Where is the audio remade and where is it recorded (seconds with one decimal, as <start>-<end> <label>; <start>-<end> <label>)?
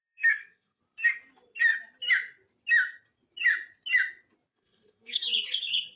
0.0-0.8 remade; 0.8-4.5 recorded; 4.5-5.3 remade; 5.3-6.0 recorded